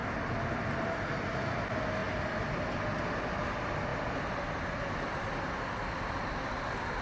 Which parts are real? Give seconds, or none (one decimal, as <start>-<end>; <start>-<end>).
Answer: 0.0-7.0